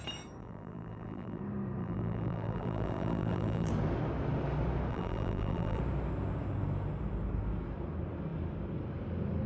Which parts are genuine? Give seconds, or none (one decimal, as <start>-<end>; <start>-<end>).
0.0-0.4; 1.4-1.8; 3.7-4.9; 5.8-9.5